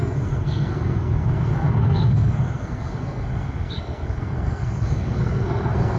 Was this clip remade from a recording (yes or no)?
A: yes